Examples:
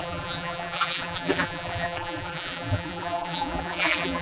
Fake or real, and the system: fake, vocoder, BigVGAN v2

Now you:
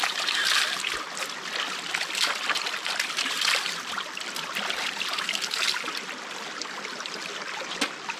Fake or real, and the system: real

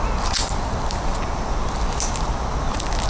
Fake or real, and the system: real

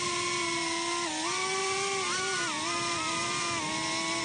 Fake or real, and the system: real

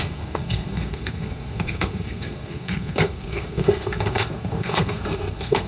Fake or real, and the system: fake, codec, SNAC